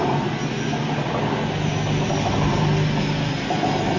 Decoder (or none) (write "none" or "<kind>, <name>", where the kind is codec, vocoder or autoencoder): none